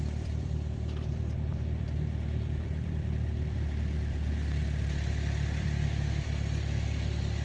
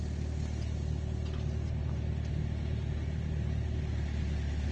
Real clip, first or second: second